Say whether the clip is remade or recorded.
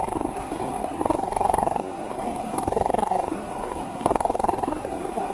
remade